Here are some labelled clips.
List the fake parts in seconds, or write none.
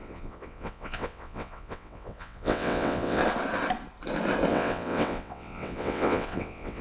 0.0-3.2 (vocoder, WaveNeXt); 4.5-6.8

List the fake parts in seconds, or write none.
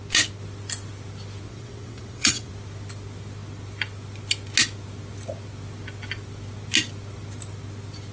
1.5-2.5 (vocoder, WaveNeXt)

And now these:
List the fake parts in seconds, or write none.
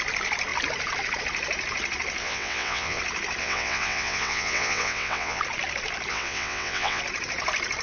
2.2-3.0 (vocoder, WaveNeXt); 3.4-5.4; 6.1-7.0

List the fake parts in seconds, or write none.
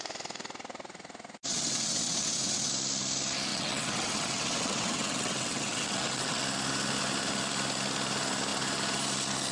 1.5-2.7 (vocoder, WaveNeXt); 3.5-6.4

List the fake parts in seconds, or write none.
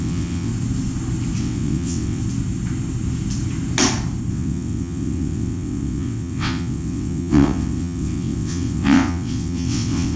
0.0-0.5 (vocoder, WaveNeXt); 1.4-2.2; 4.3-10.2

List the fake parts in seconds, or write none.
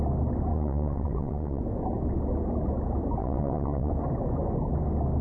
0.5-1.6 (vocoder, WaveNeXt); 3.2-3.9